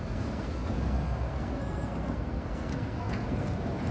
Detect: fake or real fake